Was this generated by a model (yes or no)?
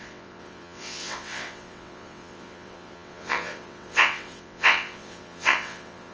yes